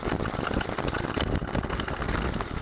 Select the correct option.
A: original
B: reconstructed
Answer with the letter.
A